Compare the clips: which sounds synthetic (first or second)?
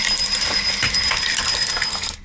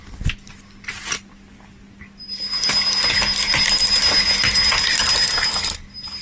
first